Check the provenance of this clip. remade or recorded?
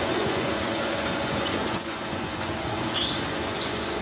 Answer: remade